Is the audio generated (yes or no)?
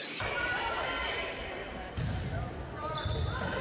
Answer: yes